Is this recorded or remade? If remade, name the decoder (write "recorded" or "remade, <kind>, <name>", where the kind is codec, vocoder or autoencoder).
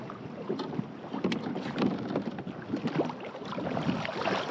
recorded